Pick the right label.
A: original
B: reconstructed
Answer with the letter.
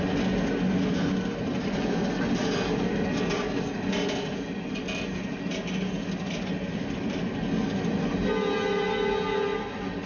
A